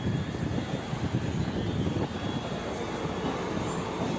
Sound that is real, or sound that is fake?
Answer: real